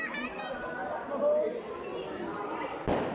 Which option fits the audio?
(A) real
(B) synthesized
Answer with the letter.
A